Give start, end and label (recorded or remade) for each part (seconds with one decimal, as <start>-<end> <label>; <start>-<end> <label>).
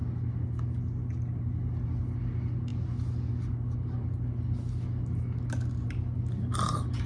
0.0-7.1 recorded